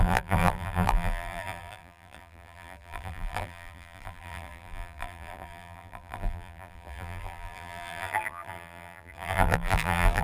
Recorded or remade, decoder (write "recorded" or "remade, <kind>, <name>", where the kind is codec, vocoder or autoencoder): remade, vocoder, BigVGAN v2